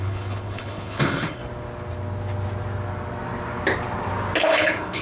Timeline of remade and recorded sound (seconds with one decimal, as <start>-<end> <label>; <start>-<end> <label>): 0.0-1.4 remade; 1.4-4.4 recorded; 4.4-5.0 remade